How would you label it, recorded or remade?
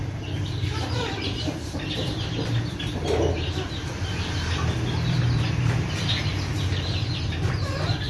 remade